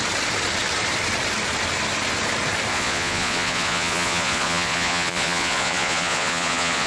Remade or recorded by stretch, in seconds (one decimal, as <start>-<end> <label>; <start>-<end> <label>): 0.0-2.7 recorded; 2.7-6.9 remade